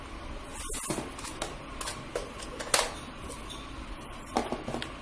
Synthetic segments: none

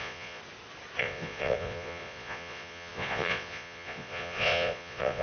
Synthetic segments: 0.0-0.4 (vocoder, Vocos); 1.0-5.2

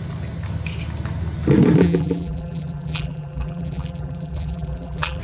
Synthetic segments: 1.8-5.2 (vocoder, BigVGAN v2)

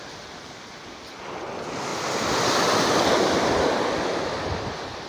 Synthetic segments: none